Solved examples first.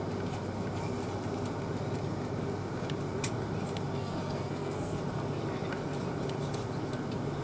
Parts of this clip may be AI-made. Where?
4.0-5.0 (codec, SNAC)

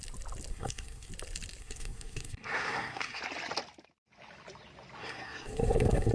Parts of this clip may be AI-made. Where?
0.5-1.1 (codec, SNAC); 1.6-3.2; 5.0-6.1

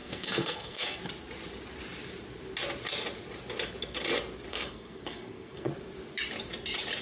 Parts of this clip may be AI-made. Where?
0.0-1.0 (codec, SNAC); 4.5-5.7

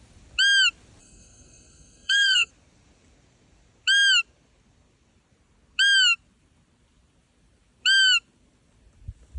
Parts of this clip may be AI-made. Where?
1.0-2.5 (codec, SNAC)

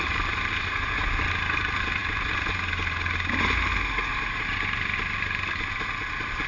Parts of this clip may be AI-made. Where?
none

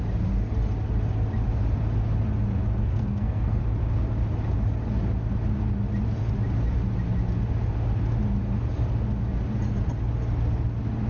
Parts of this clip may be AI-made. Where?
2.8-3.6 (codec, SNAC)